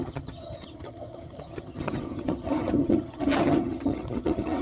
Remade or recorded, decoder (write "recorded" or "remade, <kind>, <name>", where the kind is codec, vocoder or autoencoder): remade, vocoder, HiFi-GAN